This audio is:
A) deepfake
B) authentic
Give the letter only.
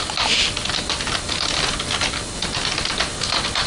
B